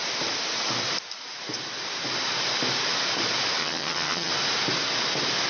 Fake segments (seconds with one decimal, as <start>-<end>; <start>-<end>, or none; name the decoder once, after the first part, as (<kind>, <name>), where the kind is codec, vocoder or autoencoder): 3.6-4.3 (vocoder, HiFi-GAN)